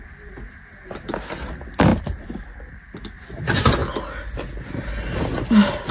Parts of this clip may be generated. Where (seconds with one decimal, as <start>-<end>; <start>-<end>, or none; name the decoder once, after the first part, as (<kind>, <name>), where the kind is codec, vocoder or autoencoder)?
none